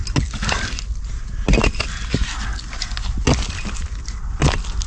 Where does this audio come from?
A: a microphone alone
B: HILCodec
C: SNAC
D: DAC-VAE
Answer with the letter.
A